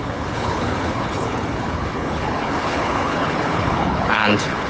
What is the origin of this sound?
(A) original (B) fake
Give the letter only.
B